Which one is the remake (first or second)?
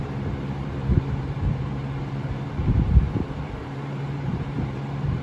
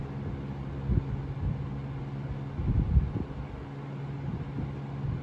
first